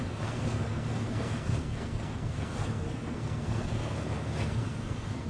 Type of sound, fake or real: fake